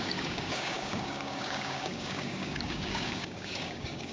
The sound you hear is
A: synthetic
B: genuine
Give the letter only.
A